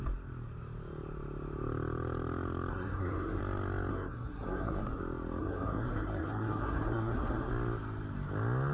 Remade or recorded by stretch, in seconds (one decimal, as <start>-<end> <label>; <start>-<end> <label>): 0.0-2.7 recorded; 2.7-3.4 remade; 3.4-3.9 recorded; 3.9-5.0 remade; 5.0-5.4 recorded; 5.4-7.5 remade; 7.5-8.7 recorded